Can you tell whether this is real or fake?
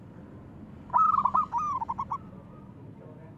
real